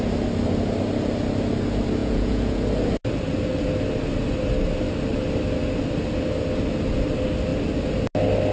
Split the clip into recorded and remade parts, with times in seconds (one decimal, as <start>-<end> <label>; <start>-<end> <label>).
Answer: 0.0-2.0 recorded; 2.0-2.6 remade; 2.6-8.5 recorded